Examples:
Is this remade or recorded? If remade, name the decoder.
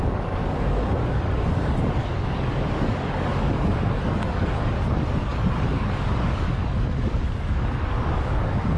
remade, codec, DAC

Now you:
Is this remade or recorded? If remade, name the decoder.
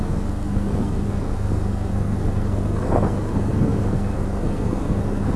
remade, codec, SNAC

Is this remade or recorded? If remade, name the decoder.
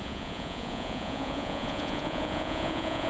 remade, vocoder, Vocos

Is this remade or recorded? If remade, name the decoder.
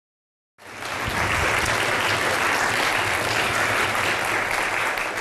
recorded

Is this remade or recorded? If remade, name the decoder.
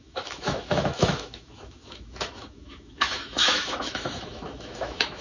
remade, autoencoder, DAC-VAE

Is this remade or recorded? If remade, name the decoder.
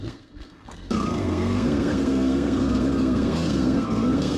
remade, codec, SNAC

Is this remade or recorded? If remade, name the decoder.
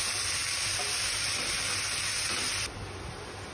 recorded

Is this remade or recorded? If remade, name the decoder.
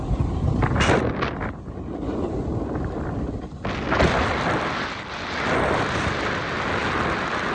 recorded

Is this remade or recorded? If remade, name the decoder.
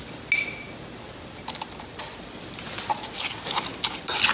recorded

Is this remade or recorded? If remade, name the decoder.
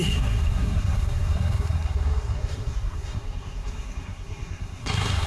remade, codec, SNAC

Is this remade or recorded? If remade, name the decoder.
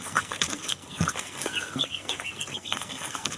remade, codec, SNAC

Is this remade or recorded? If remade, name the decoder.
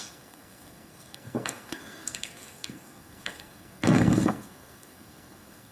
remade, codec, SNAC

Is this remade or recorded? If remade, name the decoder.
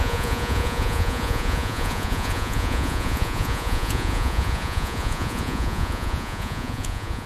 remade, vocoder, Vocos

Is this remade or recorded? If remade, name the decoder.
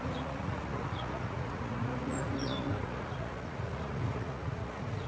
remade, vocoder, Vocos